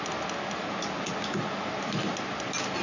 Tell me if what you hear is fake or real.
real